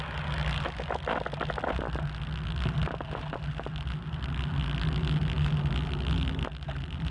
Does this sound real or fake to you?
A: real